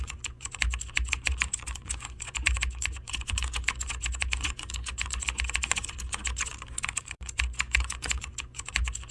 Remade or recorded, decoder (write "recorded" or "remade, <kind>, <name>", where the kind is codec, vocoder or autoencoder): remade, vocoder, Vocos